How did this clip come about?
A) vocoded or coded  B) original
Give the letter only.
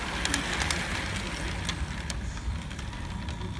B